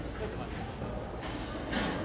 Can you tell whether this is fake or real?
real